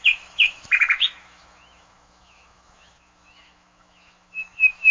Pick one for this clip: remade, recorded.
remade